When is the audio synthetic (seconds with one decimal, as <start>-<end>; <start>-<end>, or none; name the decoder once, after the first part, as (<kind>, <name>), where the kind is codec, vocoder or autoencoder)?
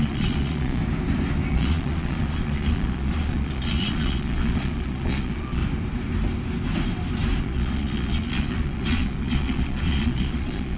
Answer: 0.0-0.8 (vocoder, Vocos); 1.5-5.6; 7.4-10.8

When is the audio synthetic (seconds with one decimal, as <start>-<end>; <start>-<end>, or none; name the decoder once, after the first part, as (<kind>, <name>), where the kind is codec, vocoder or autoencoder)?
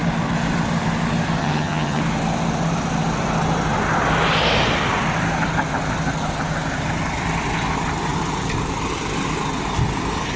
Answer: 1.4-2.0 (vocoder, HiFi-GAN)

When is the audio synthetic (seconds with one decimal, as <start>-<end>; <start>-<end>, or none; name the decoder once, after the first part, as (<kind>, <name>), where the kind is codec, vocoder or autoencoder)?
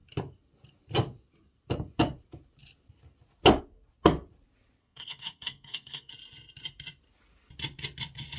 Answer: 4.8-6.1 (codec, SNAC)